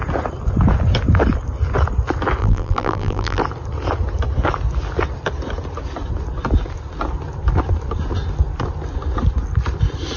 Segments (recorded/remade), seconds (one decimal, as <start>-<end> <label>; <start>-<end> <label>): 0.0-2.4 recorded; 2.4-3.4 remade; 3.4-10.2 recorded